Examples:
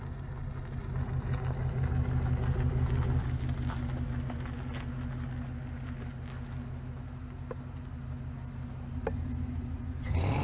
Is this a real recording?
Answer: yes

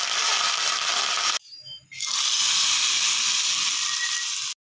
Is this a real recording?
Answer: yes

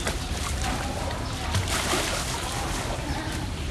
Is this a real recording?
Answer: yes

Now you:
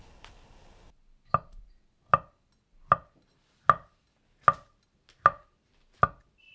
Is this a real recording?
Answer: yes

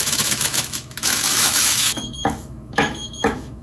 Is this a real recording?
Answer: no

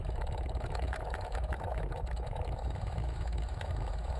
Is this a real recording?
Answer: no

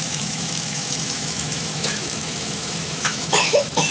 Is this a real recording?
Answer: no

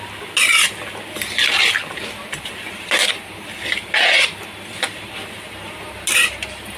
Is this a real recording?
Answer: yes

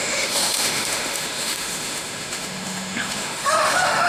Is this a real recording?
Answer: no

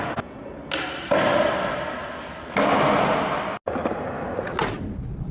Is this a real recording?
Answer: yes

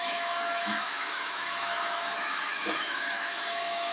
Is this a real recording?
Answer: no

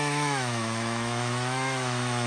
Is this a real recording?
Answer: no